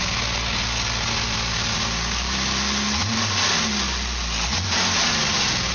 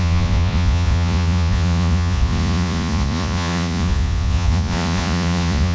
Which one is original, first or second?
first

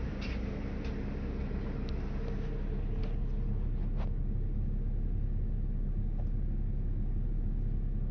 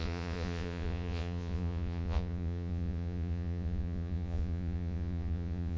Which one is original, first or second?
first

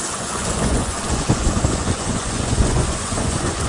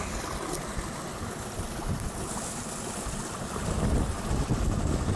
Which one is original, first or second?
second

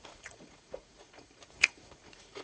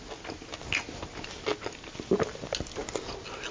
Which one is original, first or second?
second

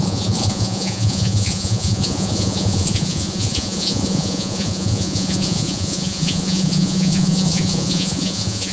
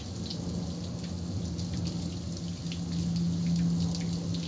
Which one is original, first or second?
second